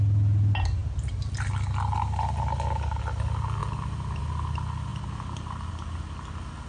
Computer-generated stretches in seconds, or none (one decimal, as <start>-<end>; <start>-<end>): none